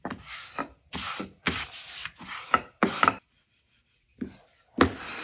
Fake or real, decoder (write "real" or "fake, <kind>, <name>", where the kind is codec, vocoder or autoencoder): real